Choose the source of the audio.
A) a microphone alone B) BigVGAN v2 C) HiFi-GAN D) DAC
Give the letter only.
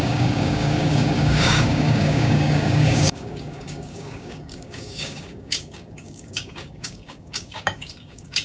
D